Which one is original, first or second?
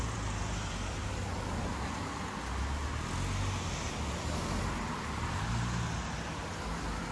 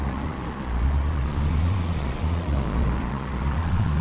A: first